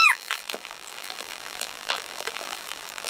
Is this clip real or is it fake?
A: fake